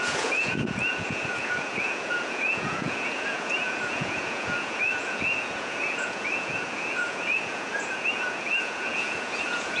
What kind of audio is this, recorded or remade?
remade